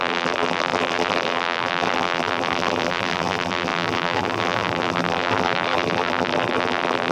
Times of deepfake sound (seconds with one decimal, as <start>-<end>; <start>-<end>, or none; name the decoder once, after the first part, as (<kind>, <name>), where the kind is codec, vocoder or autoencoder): 0.0-7.1 (vocoder, BigVGAN v2)